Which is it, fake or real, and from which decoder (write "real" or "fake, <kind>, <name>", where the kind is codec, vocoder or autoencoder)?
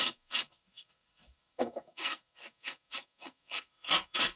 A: fake, codec, SNAC